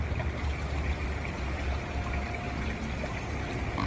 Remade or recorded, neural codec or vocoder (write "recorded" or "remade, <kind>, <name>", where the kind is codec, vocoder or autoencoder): recorded